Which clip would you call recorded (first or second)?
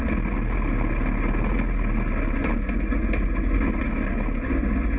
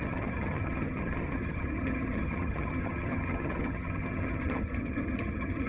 first